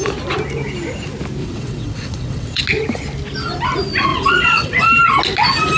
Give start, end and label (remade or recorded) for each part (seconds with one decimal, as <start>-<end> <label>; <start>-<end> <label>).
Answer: 0.0-1.4 recorded; 1.4-2.6 remade; 2.6-4.1 recorded; 4.1-4.8 remade; 4.8-5.8 recorded